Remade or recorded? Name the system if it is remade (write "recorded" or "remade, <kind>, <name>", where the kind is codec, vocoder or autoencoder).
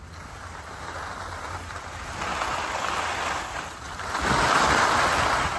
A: recorded